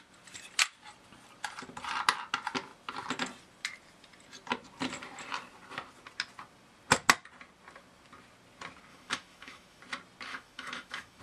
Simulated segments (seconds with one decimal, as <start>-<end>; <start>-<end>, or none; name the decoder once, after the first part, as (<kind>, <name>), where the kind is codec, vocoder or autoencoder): 8.9-9.8 (autoencoder, DAC-VAE); 10.3-11.2

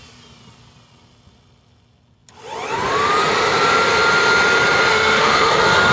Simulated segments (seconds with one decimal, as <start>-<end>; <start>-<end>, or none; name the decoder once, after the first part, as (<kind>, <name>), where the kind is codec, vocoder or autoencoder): 4.9-5.5 (autoencoder, DAC-VAE)

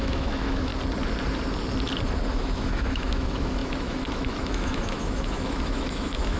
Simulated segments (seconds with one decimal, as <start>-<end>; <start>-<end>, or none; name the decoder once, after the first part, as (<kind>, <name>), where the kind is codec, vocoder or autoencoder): 0.0-0.7 (autoencoder, DAC-VAE); 2.3-6.4

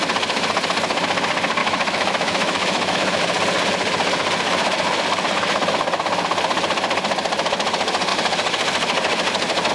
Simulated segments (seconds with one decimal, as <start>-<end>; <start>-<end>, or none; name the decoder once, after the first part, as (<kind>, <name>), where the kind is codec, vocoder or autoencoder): 1.6-3.2 (autoencoder, DAC-VAE)

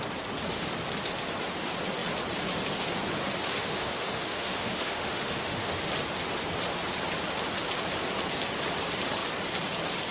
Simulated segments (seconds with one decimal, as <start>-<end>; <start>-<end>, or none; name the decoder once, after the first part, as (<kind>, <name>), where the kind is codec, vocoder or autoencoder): 3.5-5.9 (autoencoder, DAC-VAE)

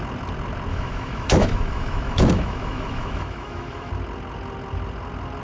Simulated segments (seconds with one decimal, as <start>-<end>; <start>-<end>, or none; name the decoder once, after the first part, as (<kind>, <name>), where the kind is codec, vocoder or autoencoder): 0.7-3.9 (autoencoder, DAC-VAE)

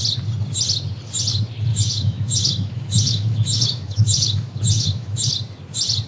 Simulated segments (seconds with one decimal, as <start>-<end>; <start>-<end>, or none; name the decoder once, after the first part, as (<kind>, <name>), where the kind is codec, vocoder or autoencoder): 1.7-5.3 (autoencoder, DAC-VAE)